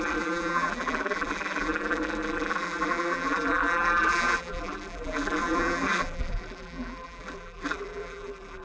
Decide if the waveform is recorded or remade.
remade